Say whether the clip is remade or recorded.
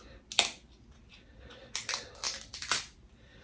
recorded